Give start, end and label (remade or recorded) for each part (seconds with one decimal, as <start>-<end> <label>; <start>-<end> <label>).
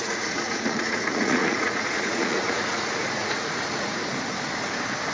0.0-4.0 remade; 4.0-5.1 recorded